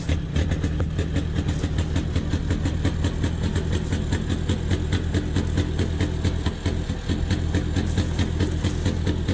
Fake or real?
real